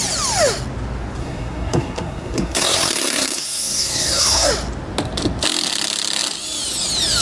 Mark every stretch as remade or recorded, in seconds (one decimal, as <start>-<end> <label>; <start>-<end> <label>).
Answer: 0.0-1.2 recorded; 1.2-4.5 remade; 4.5-7.2 recorded